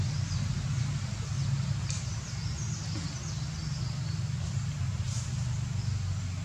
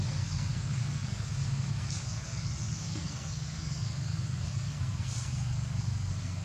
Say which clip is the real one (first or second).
first